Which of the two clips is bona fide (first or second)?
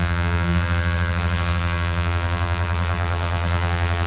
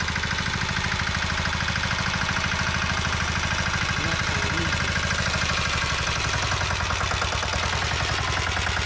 second